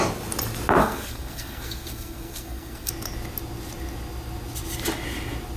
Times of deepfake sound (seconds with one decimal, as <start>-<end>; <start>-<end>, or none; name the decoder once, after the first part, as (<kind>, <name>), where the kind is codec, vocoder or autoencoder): 0.8-2.9 (codec, SNAC)